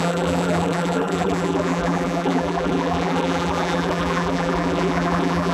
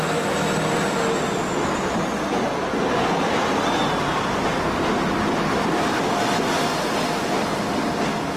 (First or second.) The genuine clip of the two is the second